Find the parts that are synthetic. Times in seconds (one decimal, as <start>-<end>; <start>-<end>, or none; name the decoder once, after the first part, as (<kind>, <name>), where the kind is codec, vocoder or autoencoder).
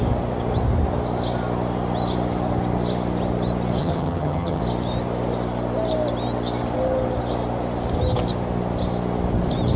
3.8-4.6 (vocoder, HiFi-GAN)